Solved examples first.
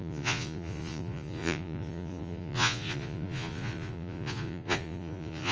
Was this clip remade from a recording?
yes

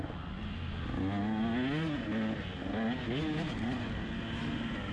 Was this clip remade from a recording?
no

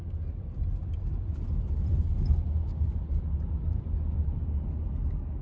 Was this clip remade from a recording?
no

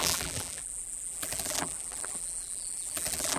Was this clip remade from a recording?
yes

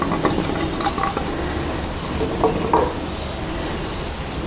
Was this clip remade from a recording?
no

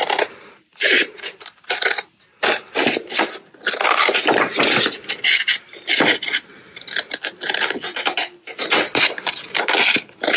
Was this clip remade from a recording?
no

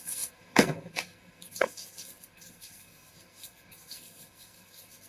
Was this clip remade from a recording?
yes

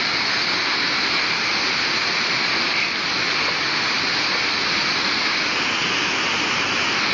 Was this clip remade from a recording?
no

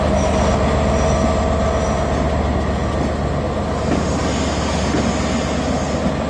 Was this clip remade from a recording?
no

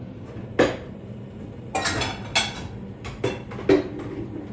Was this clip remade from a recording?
no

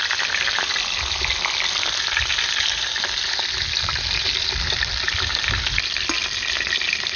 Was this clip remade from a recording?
no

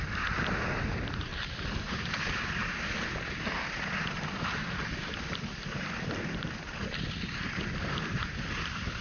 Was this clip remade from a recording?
no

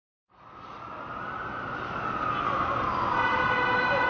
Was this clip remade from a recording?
no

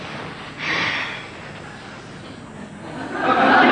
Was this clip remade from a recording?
no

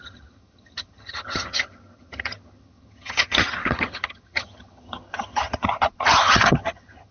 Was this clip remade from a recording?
yes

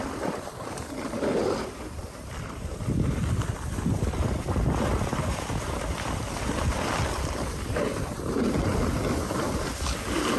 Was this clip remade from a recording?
yes